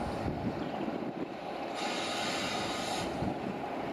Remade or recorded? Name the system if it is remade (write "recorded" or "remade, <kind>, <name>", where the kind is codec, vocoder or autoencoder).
recorded